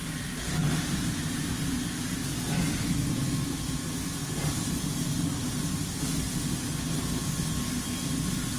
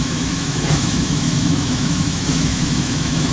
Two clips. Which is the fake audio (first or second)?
second